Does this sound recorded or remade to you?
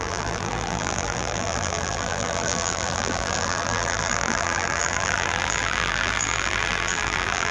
remade